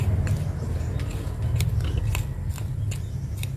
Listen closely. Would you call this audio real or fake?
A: real